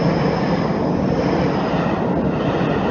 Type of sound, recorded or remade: recorded